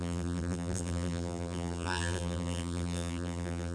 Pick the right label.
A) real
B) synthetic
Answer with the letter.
B